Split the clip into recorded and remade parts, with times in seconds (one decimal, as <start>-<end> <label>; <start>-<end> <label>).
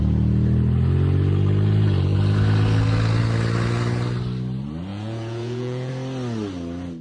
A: 0.0-4.9 recorded; 4.9-5.9 remade; 5.9-7.0 recorded